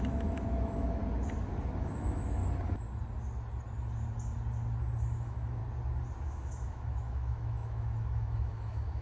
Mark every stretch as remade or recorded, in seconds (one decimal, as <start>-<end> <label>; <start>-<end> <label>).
0.0-1.0 remade; 1.0-1.8 recorded; 1.8-2.4 remade; 2.4-5.0 recorded; 5.0-5.6 remade; 5.6-6.2 recorded; 6.2-9.0 remade